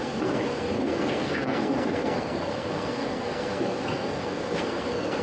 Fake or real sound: fake